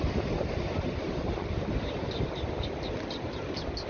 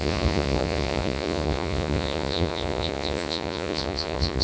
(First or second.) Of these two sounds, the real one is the first